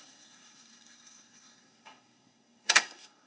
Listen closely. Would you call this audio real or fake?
fake